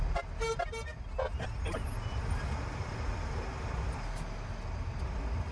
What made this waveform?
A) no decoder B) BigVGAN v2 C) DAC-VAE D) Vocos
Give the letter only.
A